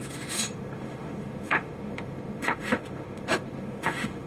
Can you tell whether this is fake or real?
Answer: fake